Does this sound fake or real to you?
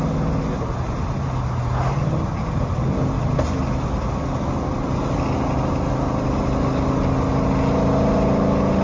real